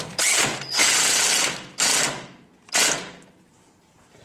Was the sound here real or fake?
fake